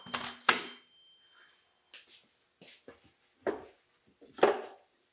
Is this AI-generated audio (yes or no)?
no